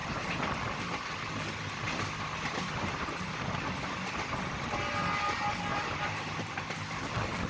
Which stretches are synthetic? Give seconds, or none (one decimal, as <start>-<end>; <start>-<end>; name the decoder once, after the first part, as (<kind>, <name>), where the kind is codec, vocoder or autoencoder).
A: 5.7-7.0 (vocoder, BigVGAN v2)